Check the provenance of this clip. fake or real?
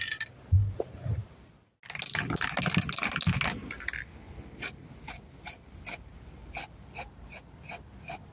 real